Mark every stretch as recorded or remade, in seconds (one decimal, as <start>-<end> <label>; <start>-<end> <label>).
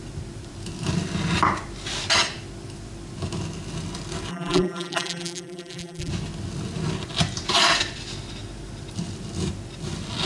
0.0-4.3 recorded; 4.3-6.1 remade; 6.1-10.3 recorded